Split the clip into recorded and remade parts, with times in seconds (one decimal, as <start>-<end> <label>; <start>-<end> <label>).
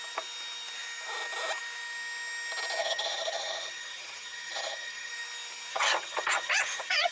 0.0-2.8 recorded; 2.8-5.1 remade; 5.1-5.7 recorded; 5.7-7.1 remade